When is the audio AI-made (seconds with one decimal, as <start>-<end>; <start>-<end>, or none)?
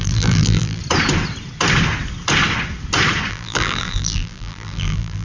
0.0-0.8; 3.3-5.2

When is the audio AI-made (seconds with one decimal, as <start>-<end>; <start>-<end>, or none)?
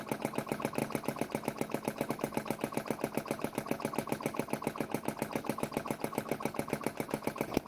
none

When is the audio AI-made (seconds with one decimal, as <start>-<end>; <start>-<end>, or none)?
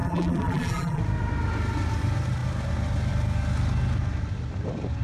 0.0-1.0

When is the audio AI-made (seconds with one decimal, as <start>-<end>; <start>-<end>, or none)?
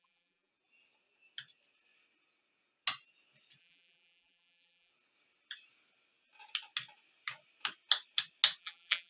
0.0-0.5; 3.6-4.9; 8.6-9.1